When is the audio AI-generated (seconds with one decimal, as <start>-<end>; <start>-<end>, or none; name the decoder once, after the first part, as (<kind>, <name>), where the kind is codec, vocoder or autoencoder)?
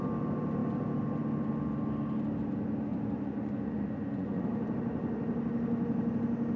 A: 2.9-4.4 (vocoder, Vocos)